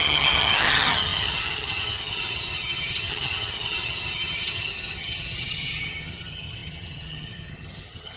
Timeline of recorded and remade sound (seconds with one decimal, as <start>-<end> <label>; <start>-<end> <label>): 0.0-8.2 remade